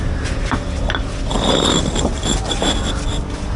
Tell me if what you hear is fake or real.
real